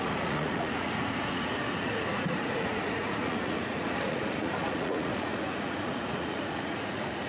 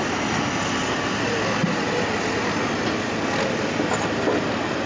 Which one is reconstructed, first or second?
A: first